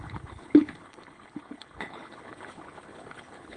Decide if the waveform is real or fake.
fake